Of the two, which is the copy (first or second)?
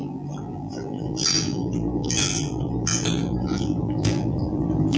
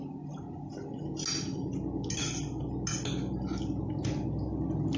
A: first